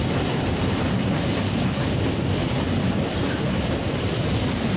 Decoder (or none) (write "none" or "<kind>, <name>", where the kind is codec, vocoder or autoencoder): vocoder, BigVGAN v2